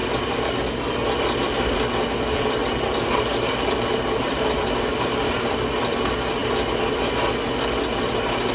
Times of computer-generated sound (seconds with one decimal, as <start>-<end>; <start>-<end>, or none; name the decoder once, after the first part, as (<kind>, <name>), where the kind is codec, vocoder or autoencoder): 0.0-0.5 (vocoder, BigVGAN v2); 2.6-5.3